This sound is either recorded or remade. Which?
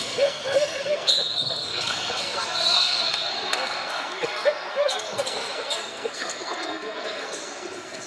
remade